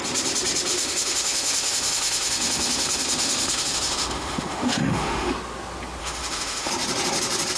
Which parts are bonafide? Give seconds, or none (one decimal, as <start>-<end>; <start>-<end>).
0.0-0.7; 5.3-6.0; 6.7-7.6